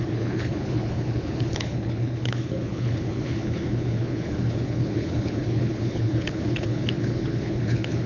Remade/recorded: remade